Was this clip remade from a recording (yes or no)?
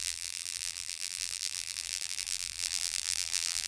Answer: yes